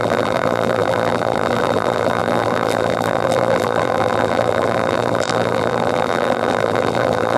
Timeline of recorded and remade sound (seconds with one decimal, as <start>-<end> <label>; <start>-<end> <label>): 0.0-7.4 remade